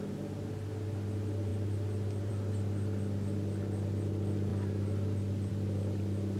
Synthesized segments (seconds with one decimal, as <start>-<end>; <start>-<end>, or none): none